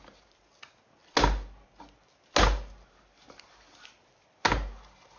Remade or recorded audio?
recorded